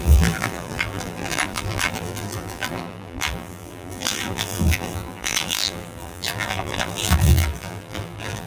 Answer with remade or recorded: remade